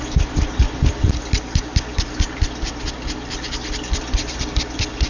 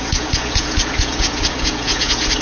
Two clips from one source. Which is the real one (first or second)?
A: first